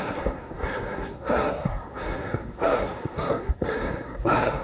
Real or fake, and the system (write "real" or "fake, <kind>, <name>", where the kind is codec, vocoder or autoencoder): fake, codec, SNAC